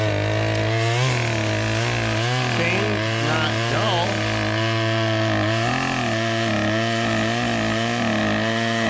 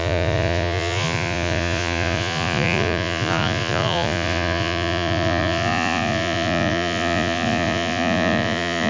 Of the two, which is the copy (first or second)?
second